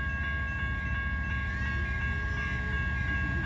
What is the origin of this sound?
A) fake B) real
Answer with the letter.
B